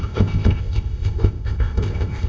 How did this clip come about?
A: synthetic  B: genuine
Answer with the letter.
A